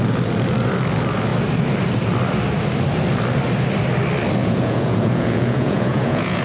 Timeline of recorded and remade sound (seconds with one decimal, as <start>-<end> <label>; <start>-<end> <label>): 0.0-4.4 recorded; 4.4-6.4 remade